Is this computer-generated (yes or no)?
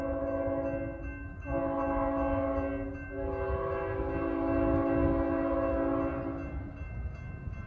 no